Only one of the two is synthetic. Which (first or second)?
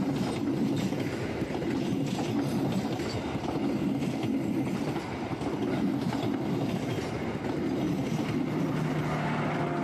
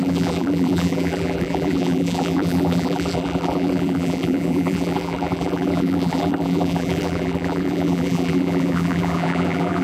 second